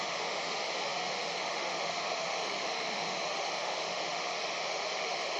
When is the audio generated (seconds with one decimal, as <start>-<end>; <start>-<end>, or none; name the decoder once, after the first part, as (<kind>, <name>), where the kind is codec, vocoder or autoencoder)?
0.0-5.4 (autoencoder, DAC-VAE)